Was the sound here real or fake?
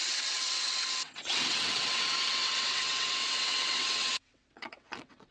fake